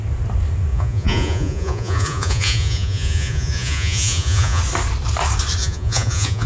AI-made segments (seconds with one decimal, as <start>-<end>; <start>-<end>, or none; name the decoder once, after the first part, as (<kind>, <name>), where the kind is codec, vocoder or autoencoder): 0.7-4.6 (vocoder, Vocos); 5.6-6.5